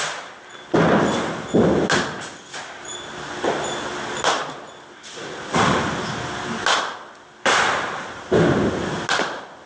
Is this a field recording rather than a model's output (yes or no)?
yes